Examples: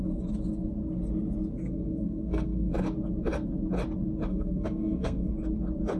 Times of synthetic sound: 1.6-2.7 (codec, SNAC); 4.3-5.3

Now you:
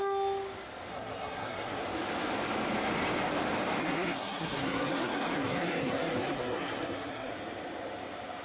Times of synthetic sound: 0.9-1.8 (codec, SNAC); 3.8-7.3

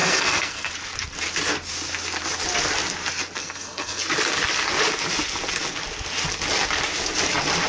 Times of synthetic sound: 0.0-0.7 (codec, SNAC); 3.4-4.0

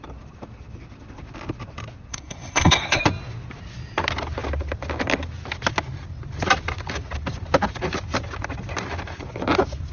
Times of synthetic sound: 2.1-3.0 (codec, SNAC)

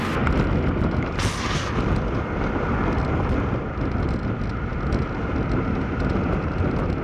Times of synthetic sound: none

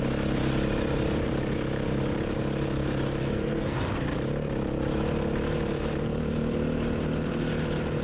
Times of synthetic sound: 3.2-3.8 (codec, SNAC)